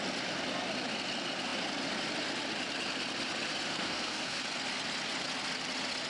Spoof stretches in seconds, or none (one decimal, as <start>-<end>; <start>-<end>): 3.7-4.4